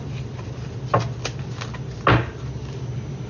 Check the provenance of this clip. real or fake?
real